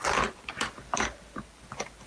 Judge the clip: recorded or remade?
remade